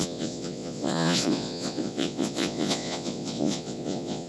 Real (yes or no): no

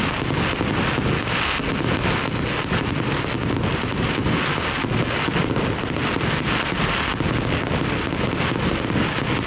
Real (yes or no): yes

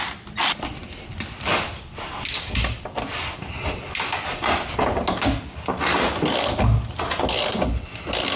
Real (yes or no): yes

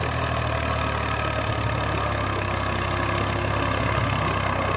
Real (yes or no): yes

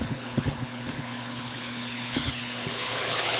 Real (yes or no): no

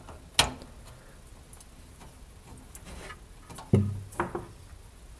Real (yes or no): yes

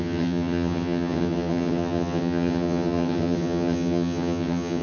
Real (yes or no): no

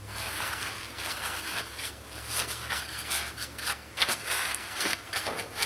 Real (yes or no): no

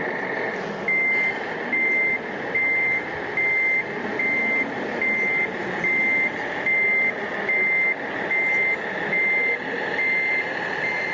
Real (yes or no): yes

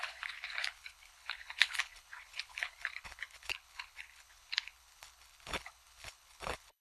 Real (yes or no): no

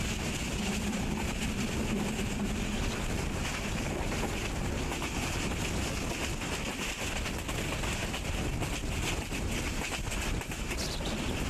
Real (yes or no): yes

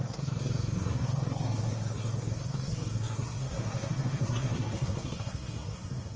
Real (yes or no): no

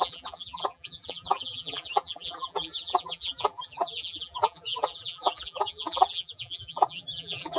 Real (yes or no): no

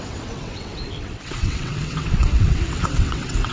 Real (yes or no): no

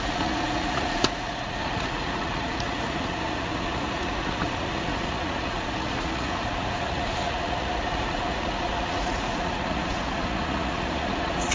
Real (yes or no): no